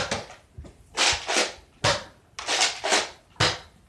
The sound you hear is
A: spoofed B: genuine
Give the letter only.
B